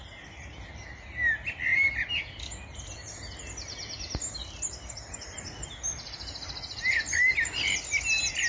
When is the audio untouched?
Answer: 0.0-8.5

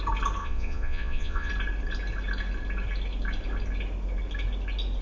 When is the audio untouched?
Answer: 0.0-0.4; 1.5-5.0

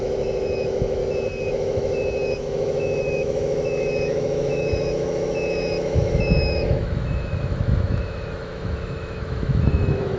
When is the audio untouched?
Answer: 1.0-1.5

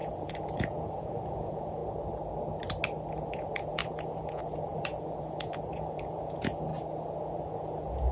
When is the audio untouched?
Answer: 1.8-3.1; 6.7-7.2

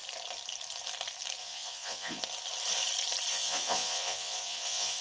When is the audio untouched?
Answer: 0.0-1.4; 2.2-3.3